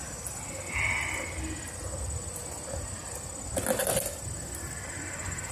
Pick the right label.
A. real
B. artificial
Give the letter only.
A